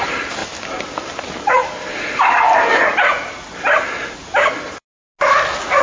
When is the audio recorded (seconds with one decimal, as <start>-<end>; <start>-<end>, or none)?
0.0-0.4; 3.9-5.8